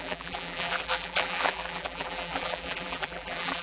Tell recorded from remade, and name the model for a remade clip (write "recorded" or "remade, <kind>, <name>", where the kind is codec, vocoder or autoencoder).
remade, vocoder, BigVGAN v2